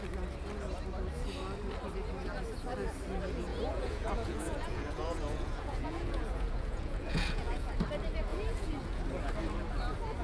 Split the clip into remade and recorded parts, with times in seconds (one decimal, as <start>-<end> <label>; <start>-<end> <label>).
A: 0.0-3.5 recorded; 3.5-7.7 remade; 7.7-8.3 recorded; 8.3-9.0 remade; 9.0-10.2 recorded